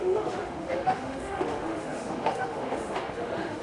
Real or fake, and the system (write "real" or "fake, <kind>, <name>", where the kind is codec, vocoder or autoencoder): fake, autoencoder, DAC-VAE